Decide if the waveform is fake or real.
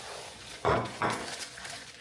fake